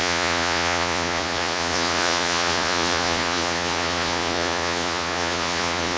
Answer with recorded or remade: remade